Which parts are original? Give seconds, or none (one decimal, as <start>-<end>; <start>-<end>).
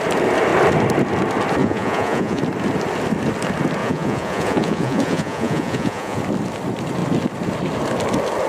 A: 0.0-1.6; 2.4-3.8; 6.2-8.5